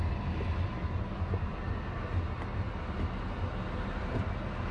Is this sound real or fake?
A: real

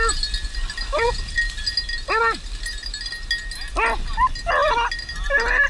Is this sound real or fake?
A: real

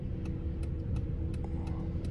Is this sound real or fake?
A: real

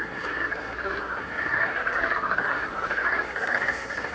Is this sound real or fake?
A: fake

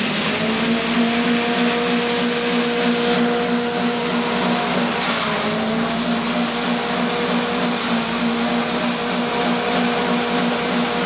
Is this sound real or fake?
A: real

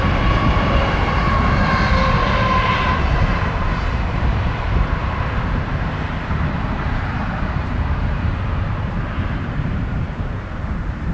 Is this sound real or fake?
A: fake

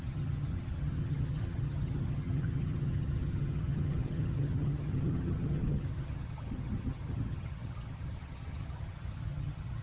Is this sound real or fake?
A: fake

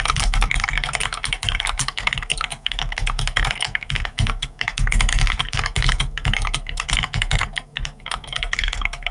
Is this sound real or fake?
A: fake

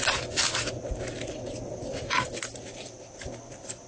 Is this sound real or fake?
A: real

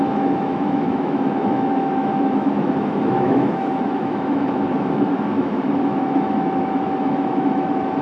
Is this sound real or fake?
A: fake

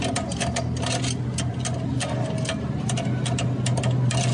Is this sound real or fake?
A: real